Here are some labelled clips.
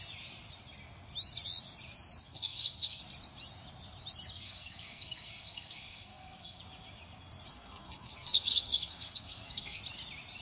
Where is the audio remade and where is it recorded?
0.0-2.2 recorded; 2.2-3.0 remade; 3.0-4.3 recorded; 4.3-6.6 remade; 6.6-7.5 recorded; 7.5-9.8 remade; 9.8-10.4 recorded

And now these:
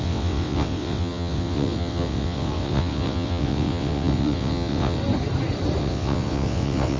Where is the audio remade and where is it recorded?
0.0-5.0 remade; 5.0-5.8 recorded; 5.8-7.0 remade

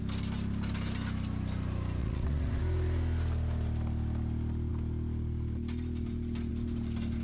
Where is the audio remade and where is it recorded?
0.0-2.0 recorded; 2.0-2.6 remade; 2.6-7.2 recorded

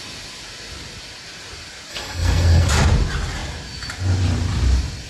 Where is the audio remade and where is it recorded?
0.0-1.9 recorded; 1.9-2.7 remade; 2.7-5.1 recorded

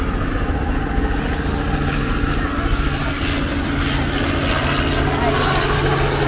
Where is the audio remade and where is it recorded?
0.0-6.3 recorded

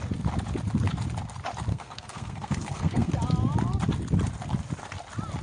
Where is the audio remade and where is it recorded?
0.0-1.7 recorded; 1.7-3.1 remade; 3.1-5.4 recorded